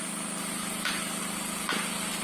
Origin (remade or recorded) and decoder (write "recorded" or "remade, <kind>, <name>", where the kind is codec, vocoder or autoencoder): recorded